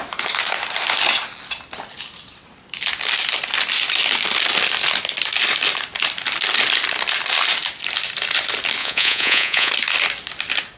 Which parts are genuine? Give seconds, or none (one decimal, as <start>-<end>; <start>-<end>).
0.0-8.8; 9.7-10.8

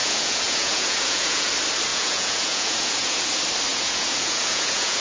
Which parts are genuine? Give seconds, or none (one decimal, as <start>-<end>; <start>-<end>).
1.5-1.9; 3.3-3.7